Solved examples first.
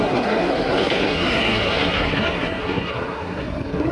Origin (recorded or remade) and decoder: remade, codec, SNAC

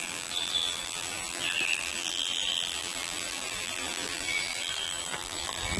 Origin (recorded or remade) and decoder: remade, vocoder, BigVGAN v2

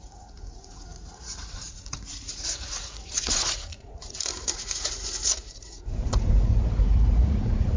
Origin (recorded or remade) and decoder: remade, vocoder, Vocos